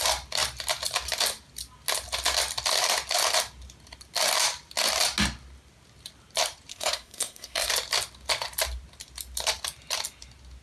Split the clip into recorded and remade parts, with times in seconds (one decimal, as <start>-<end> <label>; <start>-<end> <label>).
0.0-6.7 recorded; 6.7-7.7 remade; 7.7-10.6 recorded